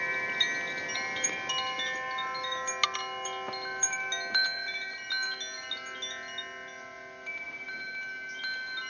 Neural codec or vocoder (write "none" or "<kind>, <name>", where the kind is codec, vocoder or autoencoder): none